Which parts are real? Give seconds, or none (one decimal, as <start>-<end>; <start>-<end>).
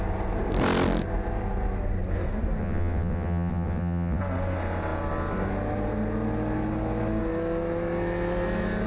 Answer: 0.0-2.6; 4.2-8.9